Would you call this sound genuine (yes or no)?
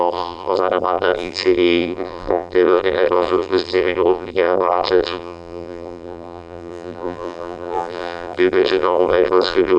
no